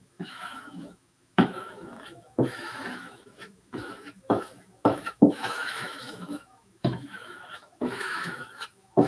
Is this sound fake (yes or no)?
yes